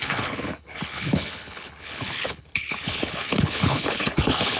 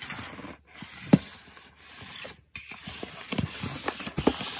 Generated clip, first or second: first